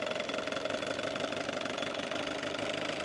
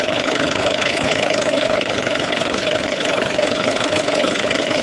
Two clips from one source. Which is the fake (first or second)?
second